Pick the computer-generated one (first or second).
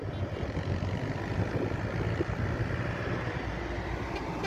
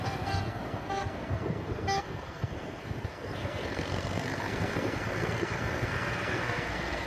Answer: second